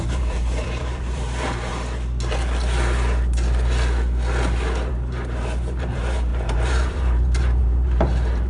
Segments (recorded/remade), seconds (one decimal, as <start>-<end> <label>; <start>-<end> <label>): 0.0-1.7 remade; 1.7-4.9 recorded; 4.9-8.5 remade